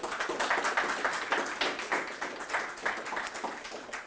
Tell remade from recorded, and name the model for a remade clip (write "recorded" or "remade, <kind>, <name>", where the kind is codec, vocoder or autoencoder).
recorded